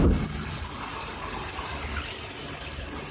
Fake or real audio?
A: real